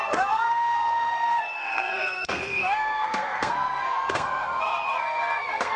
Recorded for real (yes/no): no